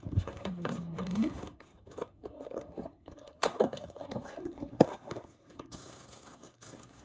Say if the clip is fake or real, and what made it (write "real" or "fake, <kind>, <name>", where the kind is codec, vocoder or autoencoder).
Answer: fake, codec, SNAC